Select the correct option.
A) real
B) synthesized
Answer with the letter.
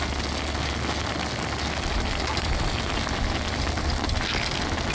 A